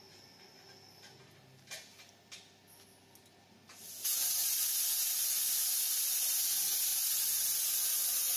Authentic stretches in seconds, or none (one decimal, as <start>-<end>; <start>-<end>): 0.0-8.4